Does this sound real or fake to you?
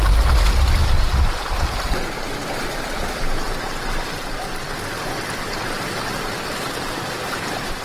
real